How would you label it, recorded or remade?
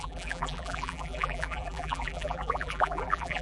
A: remade